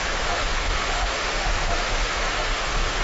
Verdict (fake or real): fake